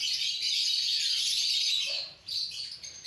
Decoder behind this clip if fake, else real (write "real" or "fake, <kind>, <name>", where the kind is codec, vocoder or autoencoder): real